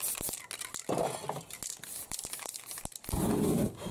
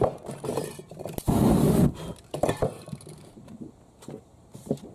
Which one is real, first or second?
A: first